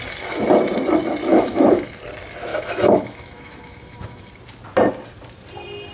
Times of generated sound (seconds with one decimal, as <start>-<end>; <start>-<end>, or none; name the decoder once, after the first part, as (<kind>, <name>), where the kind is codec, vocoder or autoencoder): 1.3-2.0 (autoencoder, DAC-VAE); 2.5-4.3